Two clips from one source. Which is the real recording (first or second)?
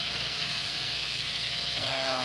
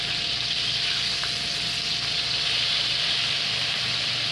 second